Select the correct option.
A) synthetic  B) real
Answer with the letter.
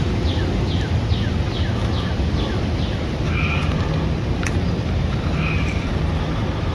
B